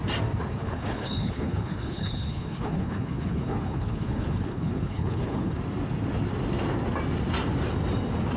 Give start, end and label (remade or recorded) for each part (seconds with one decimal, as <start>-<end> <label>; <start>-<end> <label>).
0.0-0.6 recorded; 0.6-5.6 remade; 5.6-8.4 recorded